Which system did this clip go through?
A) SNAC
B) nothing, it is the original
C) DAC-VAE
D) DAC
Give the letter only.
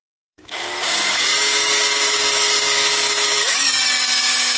D